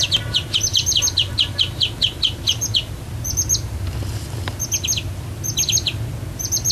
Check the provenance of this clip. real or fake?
real